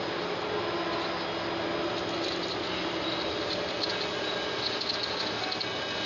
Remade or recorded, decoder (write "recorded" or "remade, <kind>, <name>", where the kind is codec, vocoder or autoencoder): recorded